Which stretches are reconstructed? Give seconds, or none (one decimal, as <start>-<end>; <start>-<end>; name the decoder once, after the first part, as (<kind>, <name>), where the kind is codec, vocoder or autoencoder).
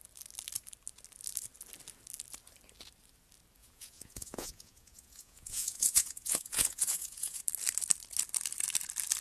3.6-7.4 (vocoder, Vocos)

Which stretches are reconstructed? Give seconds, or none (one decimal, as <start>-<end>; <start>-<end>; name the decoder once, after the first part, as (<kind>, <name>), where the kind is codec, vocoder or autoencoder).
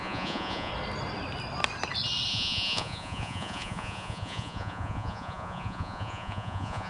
0.0-0.7 (vocoder, Vocos); 2.3-6.9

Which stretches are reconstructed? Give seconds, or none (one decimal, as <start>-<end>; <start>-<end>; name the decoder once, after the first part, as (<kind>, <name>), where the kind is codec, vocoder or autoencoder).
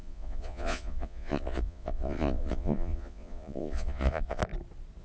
0.0-4.4 (vocoder, Vocos)